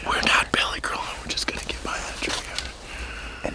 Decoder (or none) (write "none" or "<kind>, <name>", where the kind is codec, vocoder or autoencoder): none